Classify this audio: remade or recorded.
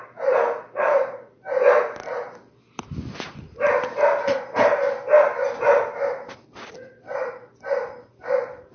recorded